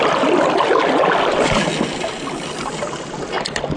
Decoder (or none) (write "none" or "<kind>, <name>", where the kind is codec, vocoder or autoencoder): none